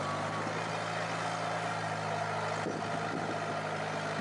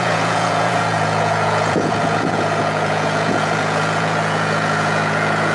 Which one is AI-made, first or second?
second